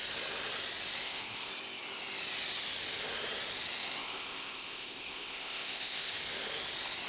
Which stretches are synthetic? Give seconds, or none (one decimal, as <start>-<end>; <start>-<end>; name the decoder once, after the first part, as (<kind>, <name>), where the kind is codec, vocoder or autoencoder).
1.0-1.5 (codec, ZipCodec); 4.0-6.1